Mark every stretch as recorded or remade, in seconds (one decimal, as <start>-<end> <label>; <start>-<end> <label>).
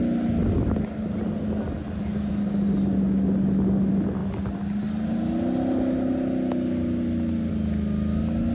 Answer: 0.0-8.5 recorded